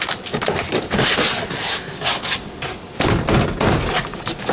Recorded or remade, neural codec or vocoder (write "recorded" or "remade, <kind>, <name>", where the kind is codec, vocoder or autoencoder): recorded